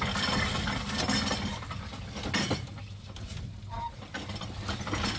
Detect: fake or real real